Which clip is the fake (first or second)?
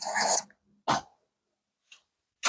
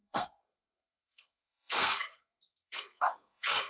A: second